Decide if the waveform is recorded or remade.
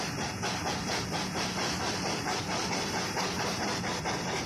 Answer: recorded